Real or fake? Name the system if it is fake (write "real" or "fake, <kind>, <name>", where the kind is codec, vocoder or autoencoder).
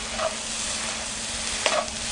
real